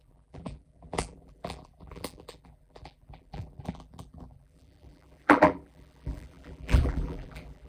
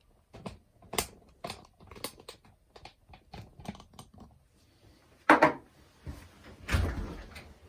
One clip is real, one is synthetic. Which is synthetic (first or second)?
first